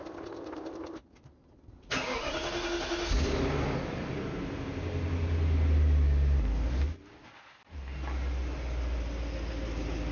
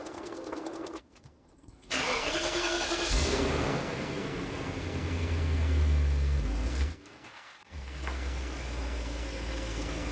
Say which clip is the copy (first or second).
second